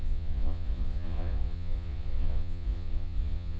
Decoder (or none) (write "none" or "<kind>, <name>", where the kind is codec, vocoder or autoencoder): vocoder, Vocos